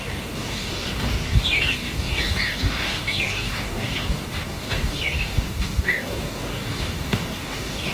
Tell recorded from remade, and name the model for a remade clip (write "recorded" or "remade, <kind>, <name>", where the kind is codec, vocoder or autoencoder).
remade, codec, DAC